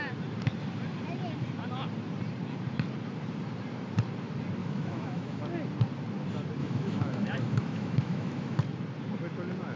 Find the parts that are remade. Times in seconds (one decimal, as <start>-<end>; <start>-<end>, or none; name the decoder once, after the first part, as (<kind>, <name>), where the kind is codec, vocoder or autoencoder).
4.6-5.4 (autoencoder, DAC-VAE); 6.6-8.6